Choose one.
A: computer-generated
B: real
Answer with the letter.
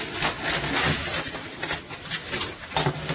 B